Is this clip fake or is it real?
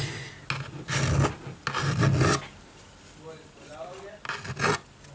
real